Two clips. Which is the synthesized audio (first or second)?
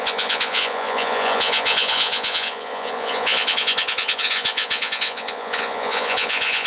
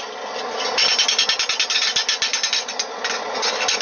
first